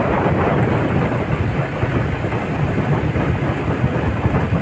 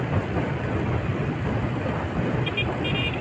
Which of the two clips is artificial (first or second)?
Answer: first